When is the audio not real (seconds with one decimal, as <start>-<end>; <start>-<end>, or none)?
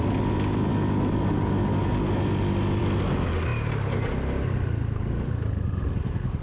3.5-4.1